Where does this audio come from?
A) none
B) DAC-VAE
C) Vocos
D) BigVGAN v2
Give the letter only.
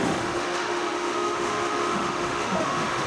B